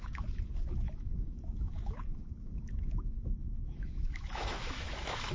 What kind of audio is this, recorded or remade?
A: remade